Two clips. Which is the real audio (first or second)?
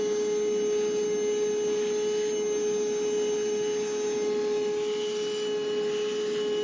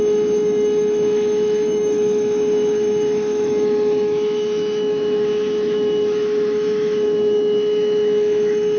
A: first